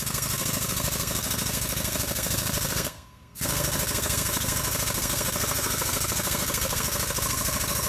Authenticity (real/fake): fake